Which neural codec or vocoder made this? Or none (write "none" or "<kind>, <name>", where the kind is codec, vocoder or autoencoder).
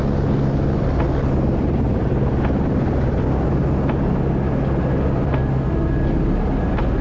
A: none